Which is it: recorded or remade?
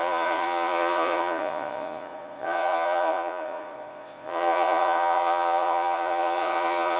remade